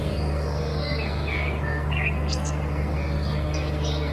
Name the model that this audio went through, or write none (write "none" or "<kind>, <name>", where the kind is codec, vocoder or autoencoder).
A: codec, SNAC